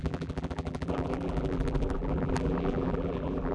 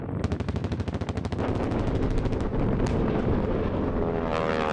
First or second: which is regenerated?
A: first